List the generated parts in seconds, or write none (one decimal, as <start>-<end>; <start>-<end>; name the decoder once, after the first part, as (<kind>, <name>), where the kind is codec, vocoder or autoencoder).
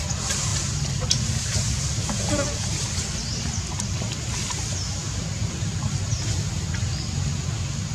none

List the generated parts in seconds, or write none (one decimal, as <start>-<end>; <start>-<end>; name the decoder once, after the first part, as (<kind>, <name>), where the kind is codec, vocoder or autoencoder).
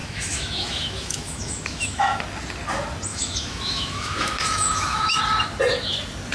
0.0-2.2 (autoencoder, DAC-VAE); 3.1-5.2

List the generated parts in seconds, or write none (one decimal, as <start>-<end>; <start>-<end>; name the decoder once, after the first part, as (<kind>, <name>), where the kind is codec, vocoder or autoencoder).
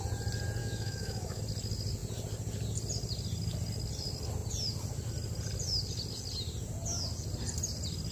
0.6-1.4 (autoencoder, DAC-VAE)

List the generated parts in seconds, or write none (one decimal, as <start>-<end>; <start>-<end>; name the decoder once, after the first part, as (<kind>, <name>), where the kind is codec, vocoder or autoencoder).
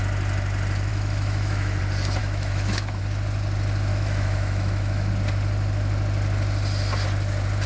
0.9-1.8 (autoencoder, DAC-VAE); 2.2-3.0; 3.9-5.1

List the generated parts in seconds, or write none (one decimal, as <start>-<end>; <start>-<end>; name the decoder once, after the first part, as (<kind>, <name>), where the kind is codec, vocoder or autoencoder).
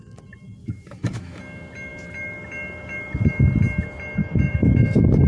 0.6-1.4 (autoencoder, DAC-VAE); 4.2-5.3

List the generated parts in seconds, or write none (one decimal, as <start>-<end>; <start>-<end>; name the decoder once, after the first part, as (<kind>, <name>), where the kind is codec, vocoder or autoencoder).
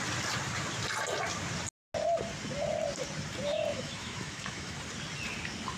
3.7-4.8 (autoencoder, DAC-VAE)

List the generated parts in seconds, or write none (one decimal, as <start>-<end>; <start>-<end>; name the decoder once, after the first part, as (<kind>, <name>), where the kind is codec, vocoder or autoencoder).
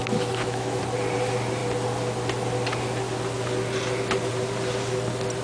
0.0-0.8 (autoencoder, DAC-VAE)